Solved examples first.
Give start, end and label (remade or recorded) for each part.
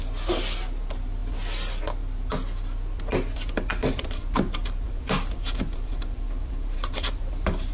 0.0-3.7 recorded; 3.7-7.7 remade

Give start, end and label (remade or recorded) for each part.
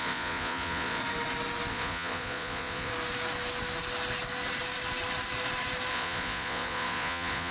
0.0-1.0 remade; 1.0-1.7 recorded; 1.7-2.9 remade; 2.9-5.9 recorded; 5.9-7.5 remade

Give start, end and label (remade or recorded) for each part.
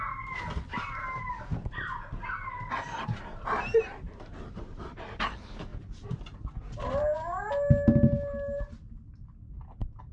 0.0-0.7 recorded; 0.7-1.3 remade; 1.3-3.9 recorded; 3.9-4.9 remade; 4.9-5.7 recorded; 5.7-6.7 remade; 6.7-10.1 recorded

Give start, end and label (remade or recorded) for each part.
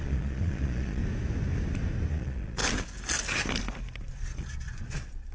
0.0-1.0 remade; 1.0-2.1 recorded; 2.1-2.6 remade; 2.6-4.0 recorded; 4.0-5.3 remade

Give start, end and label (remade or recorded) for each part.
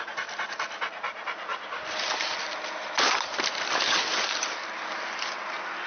0.0-5.9 recorded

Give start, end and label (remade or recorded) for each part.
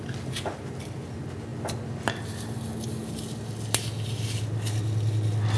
0.0-5.6 recorded